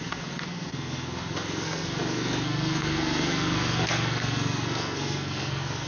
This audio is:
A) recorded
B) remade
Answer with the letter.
B